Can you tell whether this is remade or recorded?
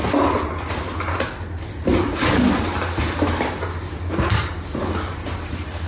recorded